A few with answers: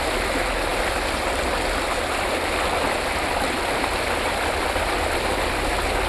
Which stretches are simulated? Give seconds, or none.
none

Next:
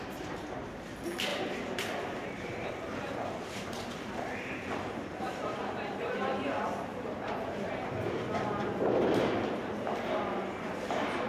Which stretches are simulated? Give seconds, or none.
1.3-4.1 (vocoder, BigVGAN v2); 5.3-9.8

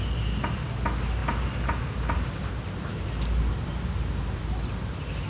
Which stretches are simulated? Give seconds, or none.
none

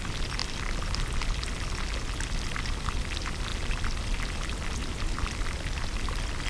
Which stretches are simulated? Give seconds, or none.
none

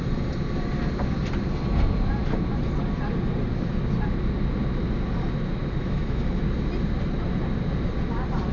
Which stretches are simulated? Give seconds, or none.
5.8-6.4 (autoencoder, DAC-VAE)

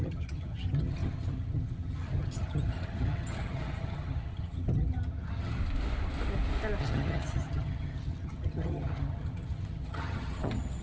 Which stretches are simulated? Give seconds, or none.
0.0-5.6 (vocoder, HiFi-GAN); 6.8-10.8

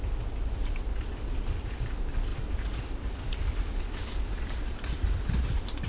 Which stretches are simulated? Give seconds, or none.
none

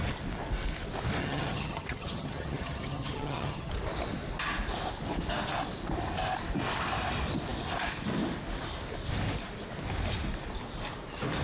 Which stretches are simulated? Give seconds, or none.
1.2-3.7 (vocoder, HiFi-GAN)